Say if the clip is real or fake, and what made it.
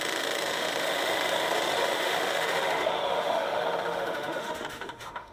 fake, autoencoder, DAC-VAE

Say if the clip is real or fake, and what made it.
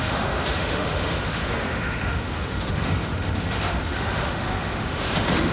fake, autoencoder, DAC-VAE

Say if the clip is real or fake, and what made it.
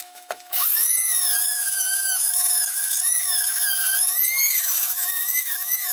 fake, autoencoder, DAC-VAE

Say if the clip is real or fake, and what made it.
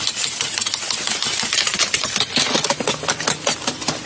real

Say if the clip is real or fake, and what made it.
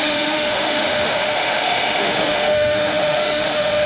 fake, autoencoder, DAC-VAE